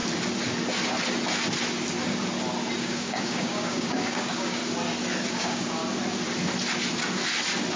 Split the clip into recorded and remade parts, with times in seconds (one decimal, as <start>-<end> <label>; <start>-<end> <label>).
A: 0.0-2.8 recorded; 2.8-4.6 remade; 4.6-5.3 recorded; 5.3-5.8 remade; 5.8-7.8 recorded